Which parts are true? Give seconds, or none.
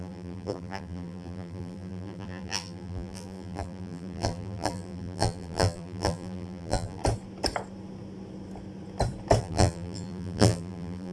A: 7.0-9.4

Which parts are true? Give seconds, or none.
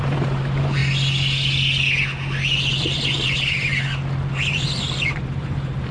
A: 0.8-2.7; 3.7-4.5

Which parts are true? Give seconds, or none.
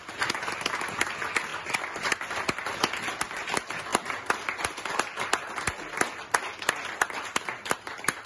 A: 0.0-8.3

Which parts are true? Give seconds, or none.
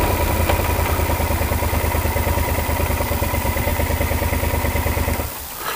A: 3.7-5.3